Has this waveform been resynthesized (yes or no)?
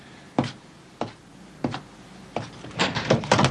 no